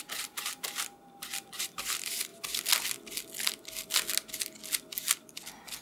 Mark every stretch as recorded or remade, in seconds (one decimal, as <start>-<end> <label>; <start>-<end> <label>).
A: 0.0-0.5 remade; 0.5-1.6 recorded; 1.6-2.3 remade; 2.3-5.8 recorded